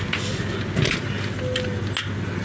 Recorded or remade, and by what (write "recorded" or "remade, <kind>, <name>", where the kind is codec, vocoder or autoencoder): recorded